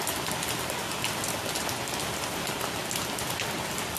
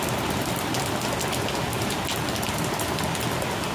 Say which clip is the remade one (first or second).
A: first